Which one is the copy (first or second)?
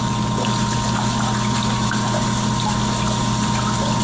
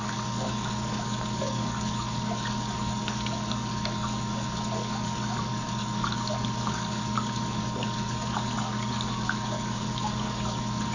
second